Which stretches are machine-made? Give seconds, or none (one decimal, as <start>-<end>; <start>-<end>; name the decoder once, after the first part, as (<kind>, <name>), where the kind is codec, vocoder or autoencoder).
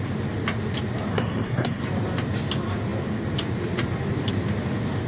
1.1-1.8 (codec, SNAC)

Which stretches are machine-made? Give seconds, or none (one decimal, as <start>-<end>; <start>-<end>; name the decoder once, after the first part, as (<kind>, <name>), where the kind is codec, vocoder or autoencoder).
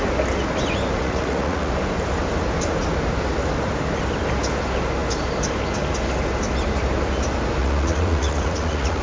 1.0-1.7 (vocoder, Vocos); 7.6-9.0